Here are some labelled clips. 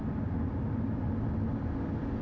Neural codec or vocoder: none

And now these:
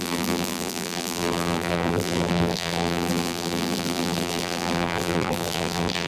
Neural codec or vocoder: vocoder, BigVGAN v2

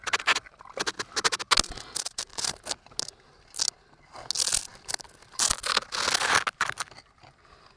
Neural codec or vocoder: none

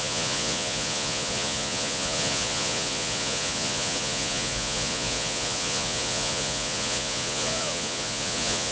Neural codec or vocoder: vocoder, Vocos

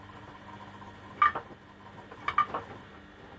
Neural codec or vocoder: none